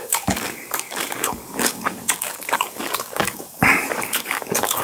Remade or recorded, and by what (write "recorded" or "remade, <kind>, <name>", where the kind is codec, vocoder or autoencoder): remade, codec, DAC